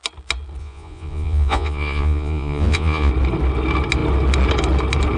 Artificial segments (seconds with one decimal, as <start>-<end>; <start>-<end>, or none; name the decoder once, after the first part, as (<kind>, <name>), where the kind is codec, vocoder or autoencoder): 0.6-3.1 (vocoder, Vocos)